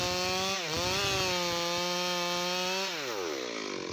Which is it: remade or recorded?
recorded